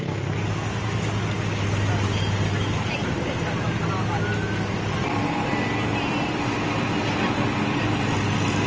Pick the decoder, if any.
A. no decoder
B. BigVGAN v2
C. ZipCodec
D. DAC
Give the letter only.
A